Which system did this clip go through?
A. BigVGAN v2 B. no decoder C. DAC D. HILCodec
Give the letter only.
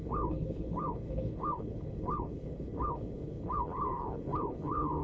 D